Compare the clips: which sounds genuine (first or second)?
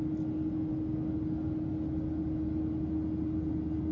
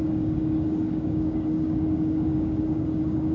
first